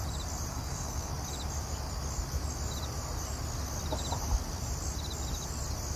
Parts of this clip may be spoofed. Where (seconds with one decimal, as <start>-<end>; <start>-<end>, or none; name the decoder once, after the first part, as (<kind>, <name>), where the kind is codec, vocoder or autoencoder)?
0.5-1.1 (codec, SNAC)